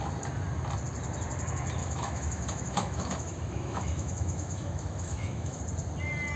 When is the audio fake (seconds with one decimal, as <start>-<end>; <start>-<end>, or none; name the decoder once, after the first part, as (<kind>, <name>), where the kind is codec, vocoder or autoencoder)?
1.8-5.6 (autoencoder, DAC-VAE)